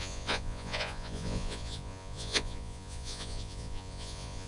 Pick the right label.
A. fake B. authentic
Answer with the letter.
A